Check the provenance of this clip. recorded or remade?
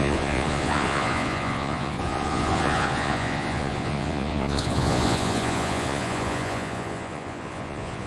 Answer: remade